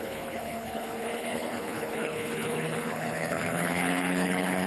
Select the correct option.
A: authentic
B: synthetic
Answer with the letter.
B